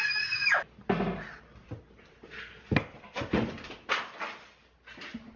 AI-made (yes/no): no